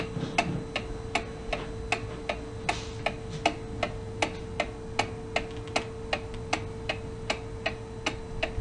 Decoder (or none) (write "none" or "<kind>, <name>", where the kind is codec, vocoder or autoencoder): none